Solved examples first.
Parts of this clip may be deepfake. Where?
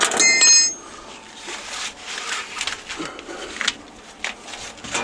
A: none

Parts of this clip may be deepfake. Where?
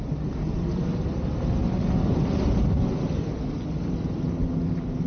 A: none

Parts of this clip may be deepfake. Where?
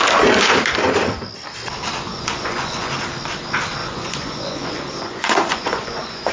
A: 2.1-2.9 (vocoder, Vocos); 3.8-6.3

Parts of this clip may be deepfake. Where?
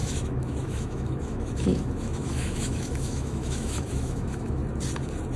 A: 0.0-4.6 (autoencoder, DAC-VAE)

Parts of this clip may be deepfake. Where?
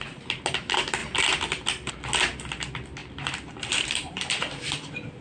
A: 3.0-5.2 (vocoder, BigVGAN v2)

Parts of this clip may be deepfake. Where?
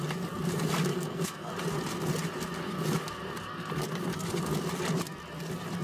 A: 0.9-1.5 (codec, SNAC)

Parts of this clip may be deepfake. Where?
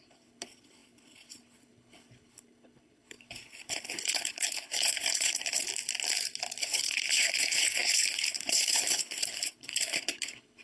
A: 0.0-5.7 (codec, HILCodec); 6.6-10.6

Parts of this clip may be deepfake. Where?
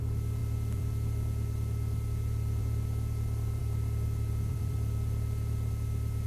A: 0.0-6.3 (vocoder, BigVGAN v2)